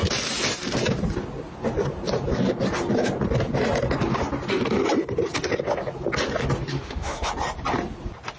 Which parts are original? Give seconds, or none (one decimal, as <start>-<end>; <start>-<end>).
0.0-6.7; 7.3-8.4